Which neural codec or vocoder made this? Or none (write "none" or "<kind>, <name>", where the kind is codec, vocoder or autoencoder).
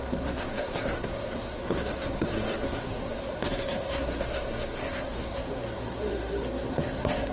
codec, SNAC